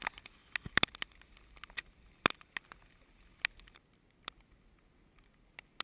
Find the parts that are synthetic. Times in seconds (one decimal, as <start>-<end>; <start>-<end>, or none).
none